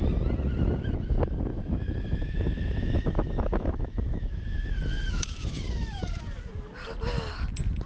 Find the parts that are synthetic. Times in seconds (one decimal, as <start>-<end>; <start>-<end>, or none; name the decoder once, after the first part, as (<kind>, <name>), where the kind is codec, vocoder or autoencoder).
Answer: 1.5-6.2 (autoencoder, DAC-VAE)